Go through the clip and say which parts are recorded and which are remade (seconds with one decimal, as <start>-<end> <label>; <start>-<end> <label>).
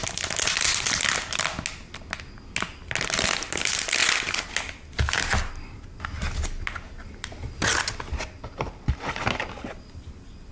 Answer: 0.0-7.0 recorded; 7.0-7.7 remade; 7.7-10.5 recorded